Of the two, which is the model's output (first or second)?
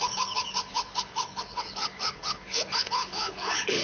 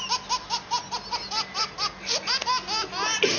first